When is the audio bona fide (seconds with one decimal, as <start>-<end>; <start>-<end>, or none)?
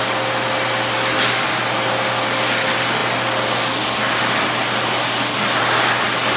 0.0-6.4